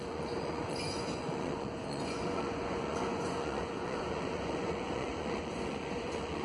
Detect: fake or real fake